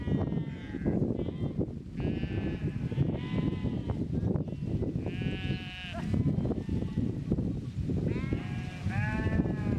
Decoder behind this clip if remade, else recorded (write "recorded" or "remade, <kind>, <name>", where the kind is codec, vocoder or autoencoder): recorded